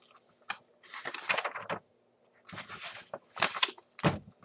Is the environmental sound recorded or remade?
recorded